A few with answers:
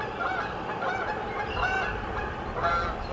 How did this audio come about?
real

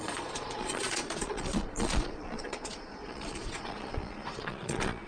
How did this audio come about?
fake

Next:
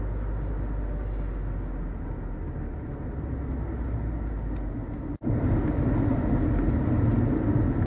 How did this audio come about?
real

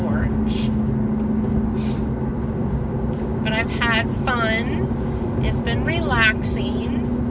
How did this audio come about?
real